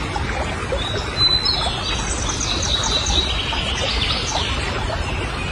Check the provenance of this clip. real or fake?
real